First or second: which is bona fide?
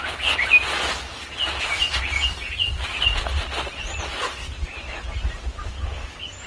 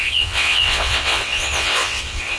first